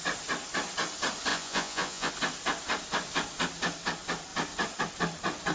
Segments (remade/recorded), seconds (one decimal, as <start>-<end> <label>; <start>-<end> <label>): 0.0-1.3 recorded; 1.3-2.1 remade; 2.1-5.5 recorded